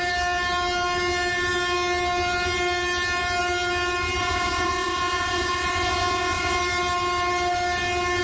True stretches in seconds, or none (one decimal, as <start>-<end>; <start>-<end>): 0.0-4.2; 6.6-8.2